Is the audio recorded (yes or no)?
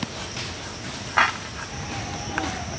yes